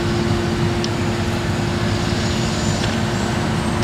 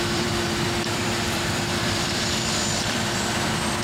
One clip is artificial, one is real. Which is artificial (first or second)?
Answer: second